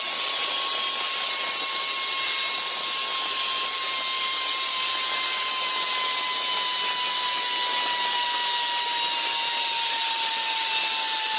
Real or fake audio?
real